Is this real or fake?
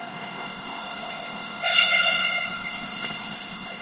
fake